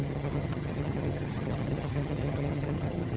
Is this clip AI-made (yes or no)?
yes